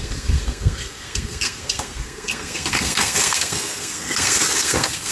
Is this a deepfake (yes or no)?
yes